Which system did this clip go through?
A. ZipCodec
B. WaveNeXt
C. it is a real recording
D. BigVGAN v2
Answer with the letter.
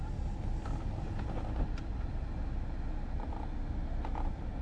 C